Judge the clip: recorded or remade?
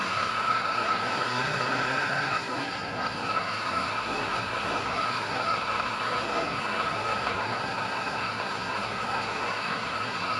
remade